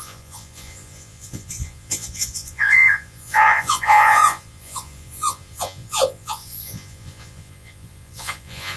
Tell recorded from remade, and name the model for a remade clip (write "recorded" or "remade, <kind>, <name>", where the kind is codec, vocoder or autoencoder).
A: remade, vocoder, Vocos